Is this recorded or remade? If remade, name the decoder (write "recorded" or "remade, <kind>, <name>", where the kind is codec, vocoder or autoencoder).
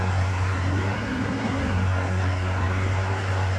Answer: remade, codec, SNAC